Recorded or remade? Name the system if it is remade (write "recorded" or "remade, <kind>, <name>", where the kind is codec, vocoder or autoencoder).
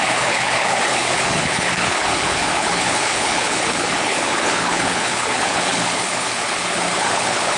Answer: remade, codec, HILCodec